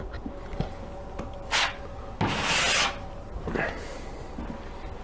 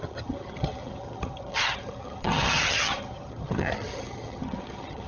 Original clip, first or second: first